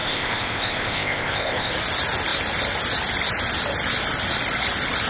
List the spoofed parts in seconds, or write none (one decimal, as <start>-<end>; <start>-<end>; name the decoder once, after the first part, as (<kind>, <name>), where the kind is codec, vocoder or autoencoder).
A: 0.0-1.7 (codec, ZipCodec)